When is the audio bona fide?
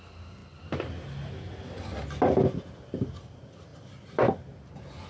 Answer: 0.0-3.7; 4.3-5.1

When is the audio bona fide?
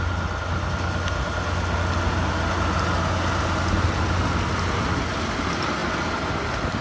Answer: 0.0-6.8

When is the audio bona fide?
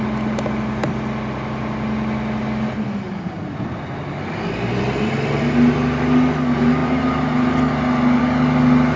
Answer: 0.0-9.0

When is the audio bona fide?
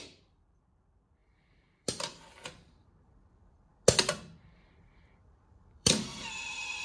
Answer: 3.7-4.5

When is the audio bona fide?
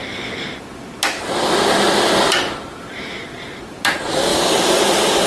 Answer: 0.0-4.3; 4.8-5.3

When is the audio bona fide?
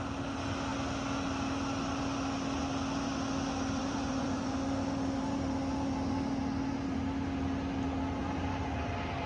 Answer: 0.0-3.8; 4.5-8.2; 8.9-9.3